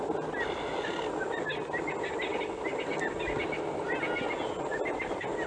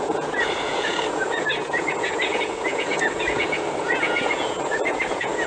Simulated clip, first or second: second